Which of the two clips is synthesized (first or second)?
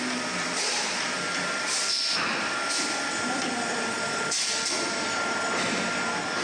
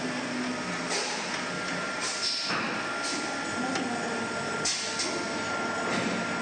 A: first